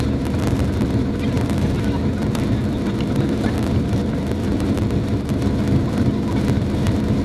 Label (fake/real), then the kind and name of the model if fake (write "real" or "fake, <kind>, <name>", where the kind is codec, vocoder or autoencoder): fake, vocoder, BigVGAN v2